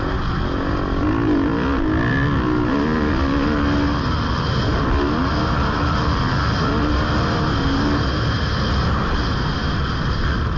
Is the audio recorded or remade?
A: recorded